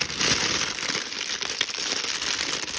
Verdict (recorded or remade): recorded